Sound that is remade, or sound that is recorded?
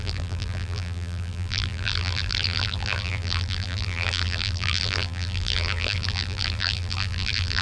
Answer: remade